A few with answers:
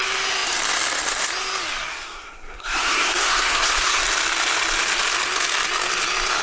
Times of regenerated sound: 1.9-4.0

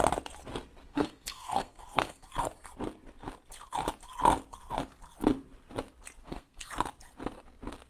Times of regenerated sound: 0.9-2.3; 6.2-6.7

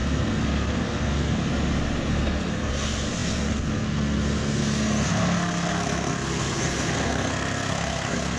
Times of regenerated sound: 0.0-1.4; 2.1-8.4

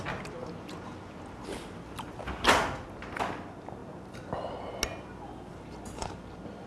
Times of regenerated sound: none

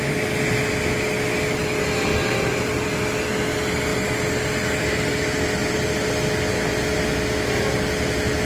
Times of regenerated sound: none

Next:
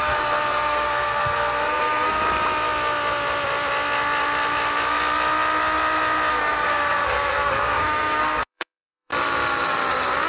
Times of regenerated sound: 0.0-2.2; 6.3-9.1